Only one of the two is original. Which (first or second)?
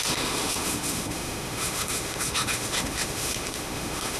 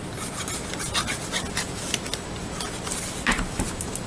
second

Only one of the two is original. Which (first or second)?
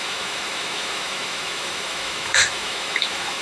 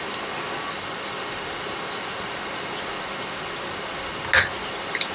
second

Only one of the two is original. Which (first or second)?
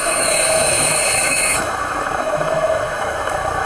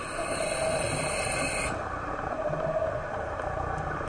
second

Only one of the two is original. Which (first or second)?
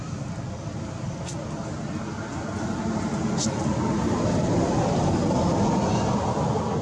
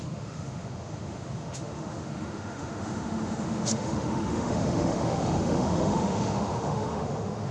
first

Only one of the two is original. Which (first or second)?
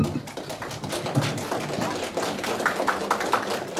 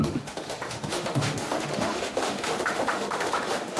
first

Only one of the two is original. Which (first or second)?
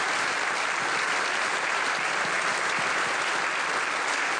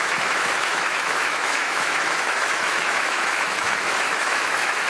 first